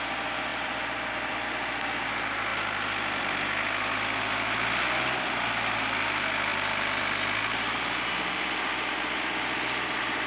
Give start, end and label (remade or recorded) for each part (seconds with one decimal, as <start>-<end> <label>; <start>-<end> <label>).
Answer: 0.0-0.5 recorded; 0.5-1.3 remade; 1.3-6.5 recorded; 6.5-7.0 remade; 7.0-10.3 recorded